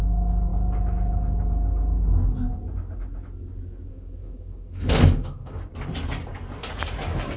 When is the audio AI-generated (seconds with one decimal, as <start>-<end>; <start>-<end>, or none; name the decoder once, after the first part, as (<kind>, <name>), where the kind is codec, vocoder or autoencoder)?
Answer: 3.9-5.6 (autoencoder, DAC-VAE)